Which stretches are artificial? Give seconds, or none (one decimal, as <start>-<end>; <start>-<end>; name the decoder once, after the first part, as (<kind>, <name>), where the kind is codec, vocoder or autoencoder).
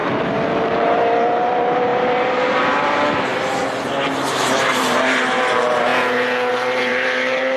0.5-3.3 (vocoder, BigVGAN v2); 4.3-5.9; 6.5-7.6